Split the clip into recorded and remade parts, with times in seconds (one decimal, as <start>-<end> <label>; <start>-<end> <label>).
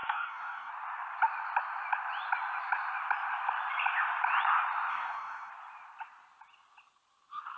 0.0-0.7 remade; 0.7-4.9 recorded; 4.9-5.5 remade; 5.5-7.6 recorded